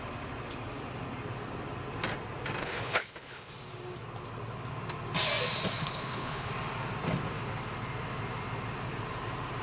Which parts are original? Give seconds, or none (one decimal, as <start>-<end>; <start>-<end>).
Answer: 0.0-2.6; 3.5-5.8; 6.5-9.6